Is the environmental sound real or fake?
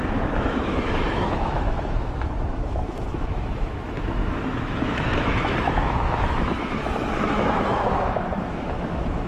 fake